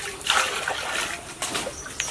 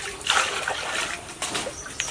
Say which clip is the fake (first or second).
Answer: second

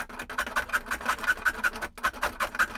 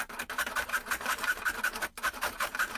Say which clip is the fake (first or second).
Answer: second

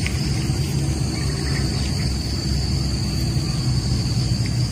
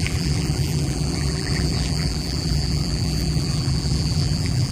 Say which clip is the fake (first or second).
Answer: second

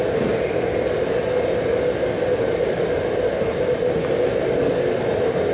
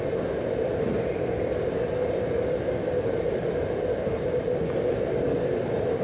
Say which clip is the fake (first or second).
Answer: second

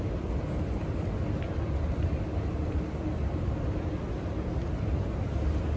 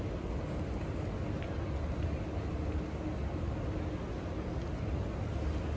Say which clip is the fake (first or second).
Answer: first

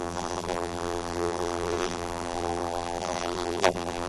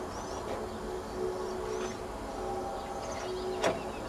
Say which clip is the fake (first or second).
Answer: first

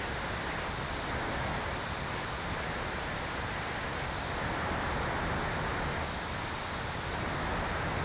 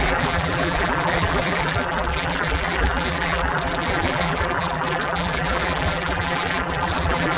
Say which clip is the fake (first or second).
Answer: second